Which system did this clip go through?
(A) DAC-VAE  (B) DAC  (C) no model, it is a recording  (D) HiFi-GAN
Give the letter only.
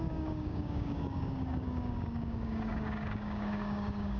B